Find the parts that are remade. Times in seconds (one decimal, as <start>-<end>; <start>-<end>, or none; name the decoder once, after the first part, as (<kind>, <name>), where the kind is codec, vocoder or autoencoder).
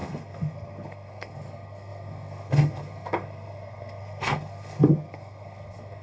0.0-6.0 (codec, SNAC)